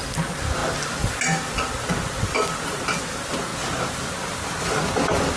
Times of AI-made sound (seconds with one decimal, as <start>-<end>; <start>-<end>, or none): none